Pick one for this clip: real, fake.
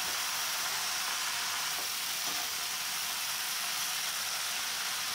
real